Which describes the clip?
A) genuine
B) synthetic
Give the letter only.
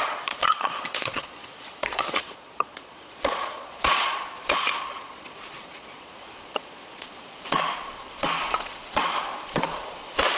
B